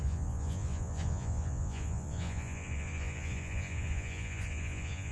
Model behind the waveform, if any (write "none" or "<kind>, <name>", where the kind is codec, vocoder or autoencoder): vocoder, Vocos